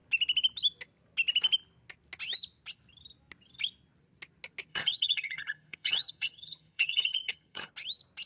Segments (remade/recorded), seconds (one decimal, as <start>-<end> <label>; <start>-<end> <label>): 0.0-4.7 recorded; 4.7-7.7 remade; 7.7-8.3 recorded